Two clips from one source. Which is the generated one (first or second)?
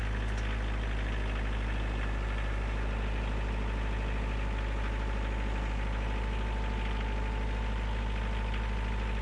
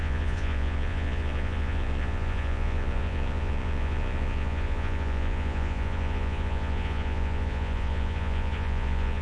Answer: second